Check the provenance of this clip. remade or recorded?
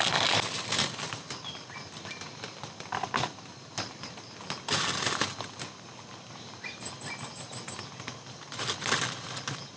recorded